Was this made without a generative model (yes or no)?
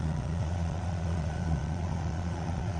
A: no